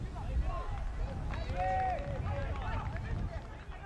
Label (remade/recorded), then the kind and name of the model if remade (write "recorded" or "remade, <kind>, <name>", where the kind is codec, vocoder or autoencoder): recorded